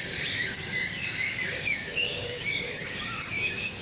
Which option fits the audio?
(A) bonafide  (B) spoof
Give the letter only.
B